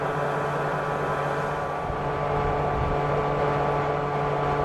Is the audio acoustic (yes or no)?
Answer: yes